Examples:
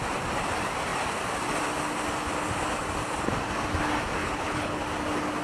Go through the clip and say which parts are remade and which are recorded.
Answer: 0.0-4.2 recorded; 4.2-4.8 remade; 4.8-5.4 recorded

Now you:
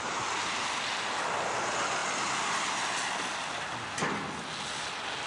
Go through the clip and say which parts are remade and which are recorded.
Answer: 0.0-5.3 recorded

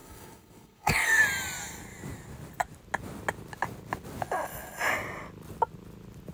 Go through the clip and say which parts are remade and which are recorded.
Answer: 0.0-1.2 remade; 1.2-6.3 recorded

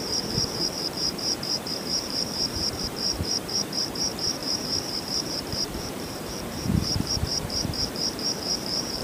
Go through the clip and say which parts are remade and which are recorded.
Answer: 0.0-9.0 remade

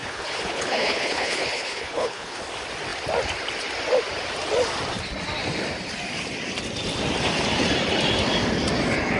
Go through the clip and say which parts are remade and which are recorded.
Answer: 0.0-2.4 remade; 2.4-9.2 recorded

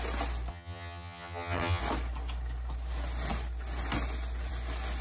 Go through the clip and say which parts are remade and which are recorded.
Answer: 0.0-0.5 recorded; 0.5-1.8 remade; 1.8-5.0 recorded